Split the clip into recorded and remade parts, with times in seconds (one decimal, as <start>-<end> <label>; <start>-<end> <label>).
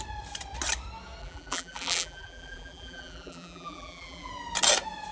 0.0-1.2 recorded; 1.2-4.3 remade; 4.3-5.1 recorded